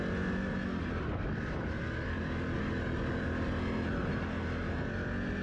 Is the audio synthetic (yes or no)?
no